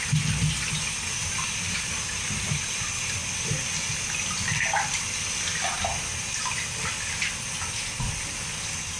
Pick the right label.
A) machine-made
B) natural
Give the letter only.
B